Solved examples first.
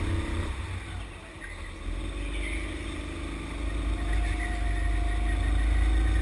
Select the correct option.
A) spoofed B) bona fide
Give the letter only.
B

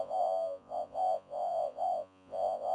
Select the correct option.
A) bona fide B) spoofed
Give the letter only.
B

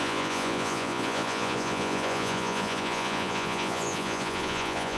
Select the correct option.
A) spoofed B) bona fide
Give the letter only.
A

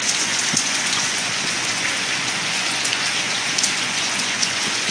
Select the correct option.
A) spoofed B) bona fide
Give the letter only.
A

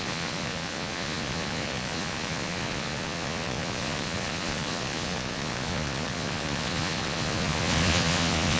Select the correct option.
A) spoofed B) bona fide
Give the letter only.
A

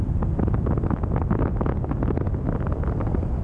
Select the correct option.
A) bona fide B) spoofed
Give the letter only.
A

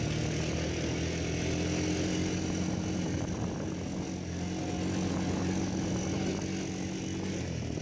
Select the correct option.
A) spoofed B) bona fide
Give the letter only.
B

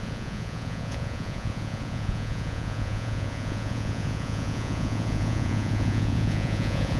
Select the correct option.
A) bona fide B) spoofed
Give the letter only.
B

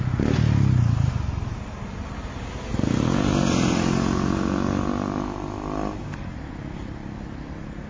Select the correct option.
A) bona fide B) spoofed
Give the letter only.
A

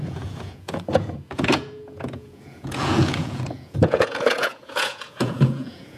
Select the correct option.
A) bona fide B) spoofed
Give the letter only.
B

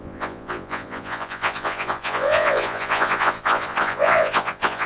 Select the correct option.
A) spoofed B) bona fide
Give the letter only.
A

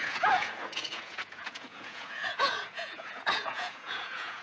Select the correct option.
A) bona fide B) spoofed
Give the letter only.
B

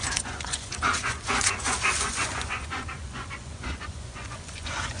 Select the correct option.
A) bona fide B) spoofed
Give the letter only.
B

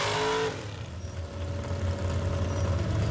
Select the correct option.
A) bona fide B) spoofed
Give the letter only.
A